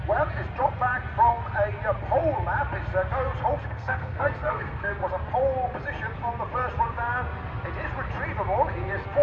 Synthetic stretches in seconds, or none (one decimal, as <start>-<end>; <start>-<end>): 3.6-4.9